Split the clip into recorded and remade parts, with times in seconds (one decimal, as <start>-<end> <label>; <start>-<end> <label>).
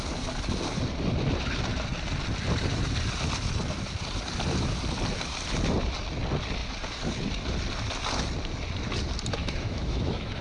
0.0-9.4 recorded; 9.4-10.4 remade